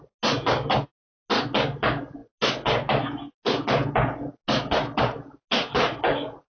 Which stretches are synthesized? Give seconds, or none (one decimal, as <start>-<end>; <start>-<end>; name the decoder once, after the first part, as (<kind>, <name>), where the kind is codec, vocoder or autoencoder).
none